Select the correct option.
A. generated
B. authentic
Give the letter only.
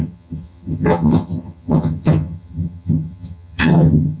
A